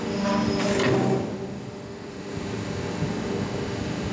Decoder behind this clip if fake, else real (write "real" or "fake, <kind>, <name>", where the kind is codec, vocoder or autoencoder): real